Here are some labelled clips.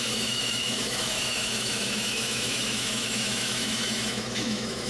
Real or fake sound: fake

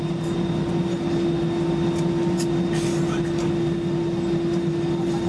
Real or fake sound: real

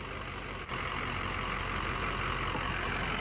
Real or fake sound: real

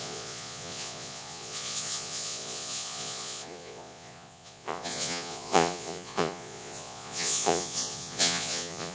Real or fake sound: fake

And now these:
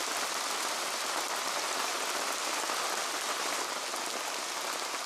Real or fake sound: real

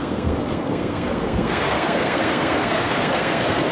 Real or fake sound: fake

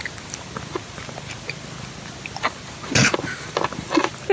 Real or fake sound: real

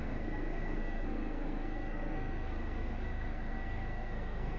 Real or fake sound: fake